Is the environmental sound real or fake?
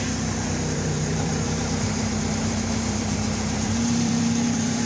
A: fake